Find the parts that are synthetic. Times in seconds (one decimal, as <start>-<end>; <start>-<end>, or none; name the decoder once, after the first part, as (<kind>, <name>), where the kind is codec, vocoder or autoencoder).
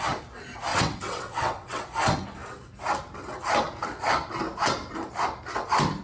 0.7-1.8 (vocoder, WaveNeXt)